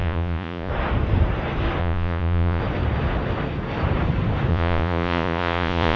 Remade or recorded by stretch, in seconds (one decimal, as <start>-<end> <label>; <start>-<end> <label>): 0.0-0.7 remade; 0.7-1.8 recorded; 1.8-2.6 remade; 2.6-4.5 recorded; 4.5-6.0 remade